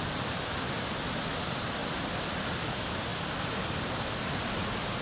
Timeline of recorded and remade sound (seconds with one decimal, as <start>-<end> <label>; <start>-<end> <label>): 0.0-1.8 recorded; 1.8-2.3 remade; 2.3-5.0 recorded

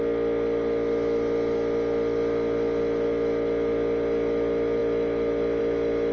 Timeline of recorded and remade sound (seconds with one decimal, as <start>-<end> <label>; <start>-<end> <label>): 0.0-6.1 recorded

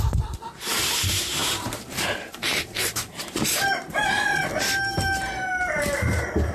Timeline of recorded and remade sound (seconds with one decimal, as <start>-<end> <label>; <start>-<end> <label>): 0.0-6.5 remade

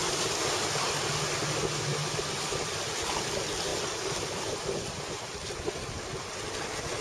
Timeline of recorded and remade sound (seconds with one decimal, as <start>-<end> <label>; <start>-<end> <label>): 0.0-3.7 recorded; 3.7-5.7 remade; 5.7-7.0 recorded

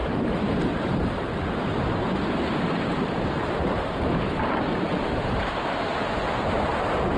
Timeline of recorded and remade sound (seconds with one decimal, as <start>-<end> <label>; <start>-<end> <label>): 0.0-7.2 remade

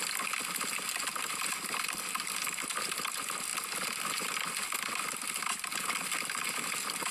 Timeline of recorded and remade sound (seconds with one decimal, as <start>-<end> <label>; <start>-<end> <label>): 0.0-7.1 recorded

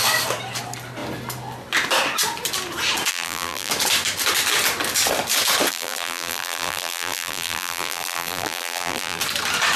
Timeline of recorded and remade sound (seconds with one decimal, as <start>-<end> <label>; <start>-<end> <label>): 0.0-3.1 recorded; 3.1-3.7 remade; 3.7-5.7 recorded; 5.7-9.2 remade; 9.2-9.8 recorded

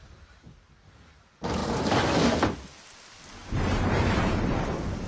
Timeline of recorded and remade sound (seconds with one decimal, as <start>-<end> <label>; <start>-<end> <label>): 0.0-3.4 recorded; 3.4-4.4 remade; 4.4-5.1 recorded